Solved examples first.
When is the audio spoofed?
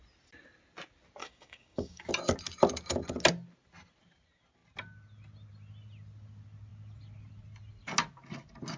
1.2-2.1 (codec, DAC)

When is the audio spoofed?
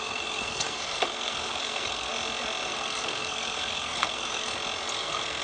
0.0-2.1 (codec, SNAC); 2.6-4.5; 5.0-5.4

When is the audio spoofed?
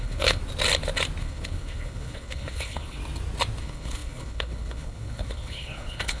0.0-0.4 (codec, HILCodec); 1.2-3.0; 3.6-6.2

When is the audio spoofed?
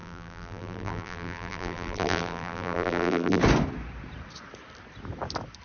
0.0-3.4 (vocoder, BigVGAN v2)